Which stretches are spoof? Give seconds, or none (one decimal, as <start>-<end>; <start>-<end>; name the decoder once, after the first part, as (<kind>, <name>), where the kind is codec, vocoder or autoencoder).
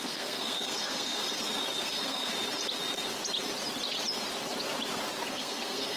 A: 0.0-1.2 (codec, SNAC); 1.8-2.3; 5.3-6.0